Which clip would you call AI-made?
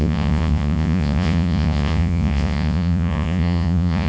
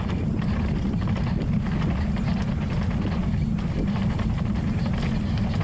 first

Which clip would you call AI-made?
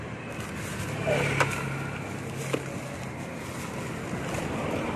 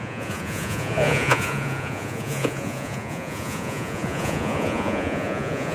second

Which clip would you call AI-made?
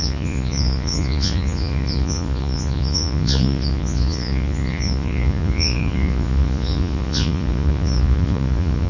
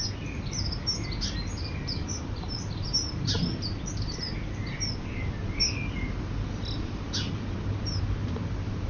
first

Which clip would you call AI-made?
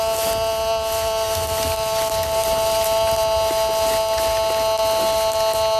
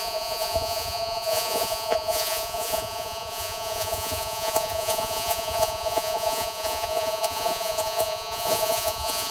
second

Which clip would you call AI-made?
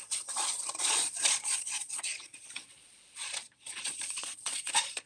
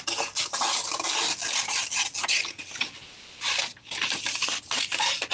first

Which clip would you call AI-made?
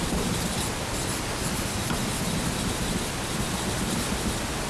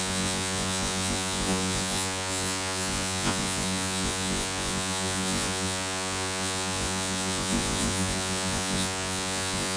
second